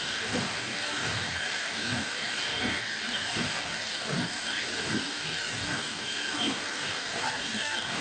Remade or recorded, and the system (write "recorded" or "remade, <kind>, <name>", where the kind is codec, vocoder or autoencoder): remade, codec, DAC